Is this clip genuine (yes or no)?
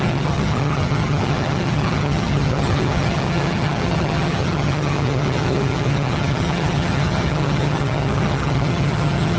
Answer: no